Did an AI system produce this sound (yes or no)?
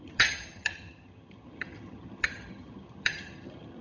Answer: yes